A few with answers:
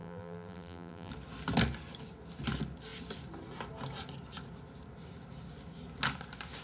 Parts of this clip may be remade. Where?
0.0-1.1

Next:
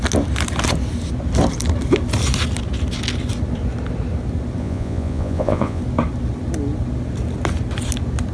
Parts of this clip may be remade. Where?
4.6-5.8